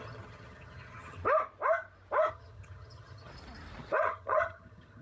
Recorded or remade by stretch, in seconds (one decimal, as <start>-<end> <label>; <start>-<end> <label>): 0.0-1.2 remade; 1.2-2.3 recorded; 2.3-3.3 remade; 3.3-4.0 recorded; 4.0-5.0 remade